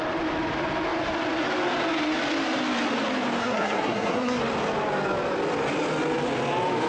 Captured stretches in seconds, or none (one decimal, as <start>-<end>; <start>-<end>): 0.0-3.4; 4.4-6.9